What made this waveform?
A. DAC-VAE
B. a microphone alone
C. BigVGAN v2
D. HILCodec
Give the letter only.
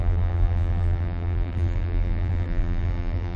C